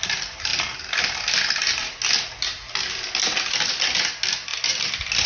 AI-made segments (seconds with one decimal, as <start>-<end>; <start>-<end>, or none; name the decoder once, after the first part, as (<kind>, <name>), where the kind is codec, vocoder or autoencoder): none